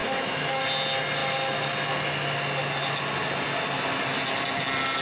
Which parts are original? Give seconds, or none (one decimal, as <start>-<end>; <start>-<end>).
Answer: 0.6-5.0